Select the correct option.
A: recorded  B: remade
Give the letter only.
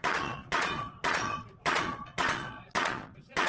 B